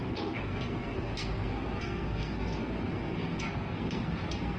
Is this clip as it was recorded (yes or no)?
no